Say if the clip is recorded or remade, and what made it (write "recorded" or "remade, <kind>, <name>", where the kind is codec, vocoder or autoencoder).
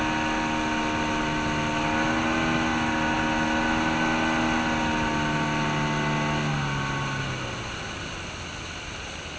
recorded